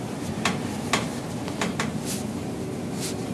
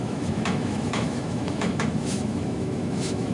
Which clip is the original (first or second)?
first